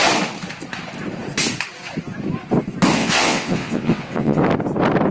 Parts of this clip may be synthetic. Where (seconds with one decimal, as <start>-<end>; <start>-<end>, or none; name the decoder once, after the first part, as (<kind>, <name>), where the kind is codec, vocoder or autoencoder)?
3.0-4.4 (vocoder, WaveNeXt)